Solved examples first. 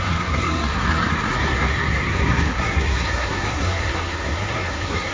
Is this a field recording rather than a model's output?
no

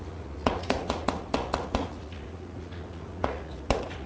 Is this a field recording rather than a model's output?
no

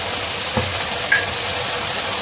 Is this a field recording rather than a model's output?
yes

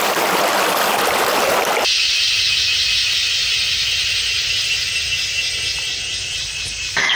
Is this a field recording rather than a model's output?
yes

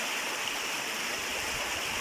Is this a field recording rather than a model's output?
yes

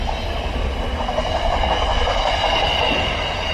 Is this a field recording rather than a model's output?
yes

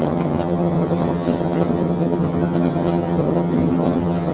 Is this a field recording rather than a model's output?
no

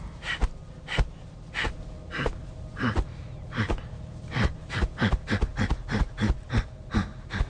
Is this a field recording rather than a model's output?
yes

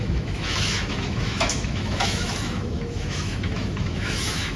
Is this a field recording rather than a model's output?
no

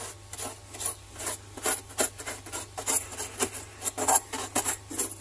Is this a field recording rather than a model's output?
yes